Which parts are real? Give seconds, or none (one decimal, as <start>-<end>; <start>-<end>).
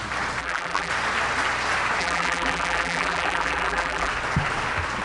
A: 0.0-0.4; 0.9-2.0; 4.1-5.0